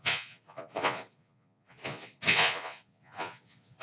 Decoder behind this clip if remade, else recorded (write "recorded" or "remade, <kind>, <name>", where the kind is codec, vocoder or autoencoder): remade, vocoder, Vocos